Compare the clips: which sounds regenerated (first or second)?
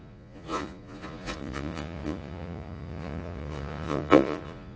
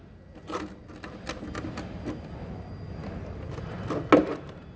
first